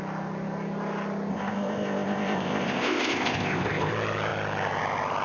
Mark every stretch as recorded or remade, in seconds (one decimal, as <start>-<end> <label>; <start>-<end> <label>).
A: 0.0-1.3 recorded; 1.3-3.9 remade; 3.9-5.2 recorded